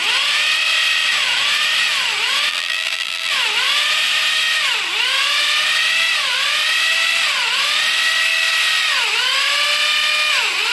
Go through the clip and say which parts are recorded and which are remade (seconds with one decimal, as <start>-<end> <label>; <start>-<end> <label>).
0.0-2.5 recorded; 2.5-3.3 remade; 3.3-10.7 recorded